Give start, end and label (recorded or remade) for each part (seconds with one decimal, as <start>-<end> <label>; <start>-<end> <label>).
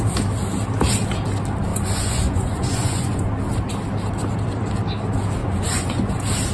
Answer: 0.0-1.7 recorded; 1.7-3.3 remade; 3.3-5.4 recorded; 5.4-6.1 remade; 6.1-6.5 recorded